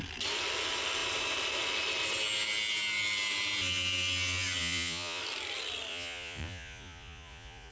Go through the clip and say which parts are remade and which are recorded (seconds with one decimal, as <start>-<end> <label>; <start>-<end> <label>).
0.0-4.6 recorded; 4.6-5.2 remade; 5.2-5.9 recorded; 5.9-7.7 remade